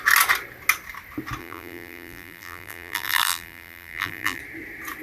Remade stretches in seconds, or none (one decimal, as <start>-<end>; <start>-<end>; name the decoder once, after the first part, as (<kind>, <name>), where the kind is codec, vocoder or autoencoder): 1.4-4.4 (vocoder, BigVGAN v2)